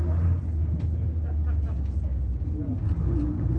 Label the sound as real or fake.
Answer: real